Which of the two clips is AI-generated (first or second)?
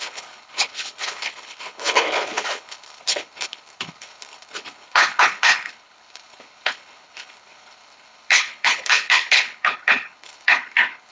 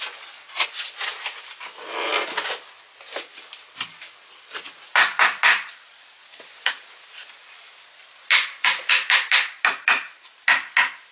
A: first